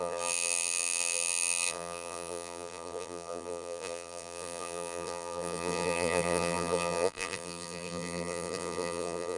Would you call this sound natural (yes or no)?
no